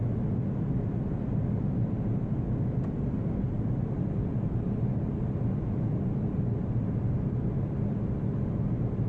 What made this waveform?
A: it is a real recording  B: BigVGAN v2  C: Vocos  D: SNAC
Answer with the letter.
A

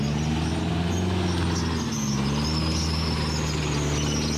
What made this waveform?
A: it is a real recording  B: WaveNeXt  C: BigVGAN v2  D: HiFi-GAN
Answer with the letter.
A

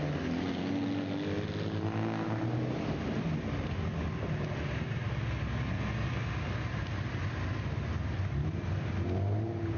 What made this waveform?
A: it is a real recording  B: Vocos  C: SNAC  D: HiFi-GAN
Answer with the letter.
A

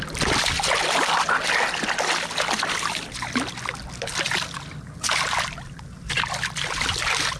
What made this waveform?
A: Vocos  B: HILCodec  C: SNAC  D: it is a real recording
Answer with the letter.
D